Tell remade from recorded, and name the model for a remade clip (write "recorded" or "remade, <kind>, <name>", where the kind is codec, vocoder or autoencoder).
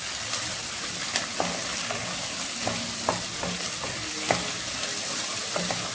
recorded